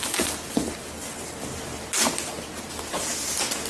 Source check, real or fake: real